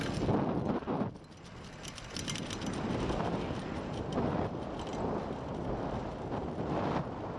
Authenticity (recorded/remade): recorded